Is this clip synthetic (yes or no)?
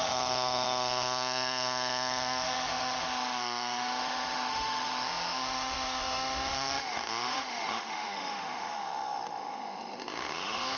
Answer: yes